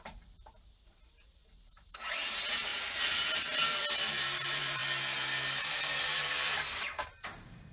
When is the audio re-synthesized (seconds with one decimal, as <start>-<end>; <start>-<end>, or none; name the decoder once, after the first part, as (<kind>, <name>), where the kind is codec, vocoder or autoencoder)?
0.0-4.8 (vocoder, BigVGAN v2); 5.6-7.7